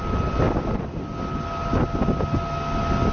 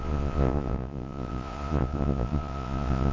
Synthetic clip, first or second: second